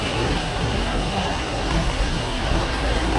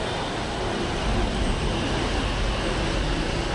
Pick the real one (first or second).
second